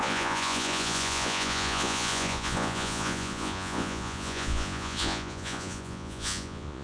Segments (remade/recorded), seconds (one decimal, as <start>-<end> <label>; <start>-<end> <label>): 0.0-6.8 remade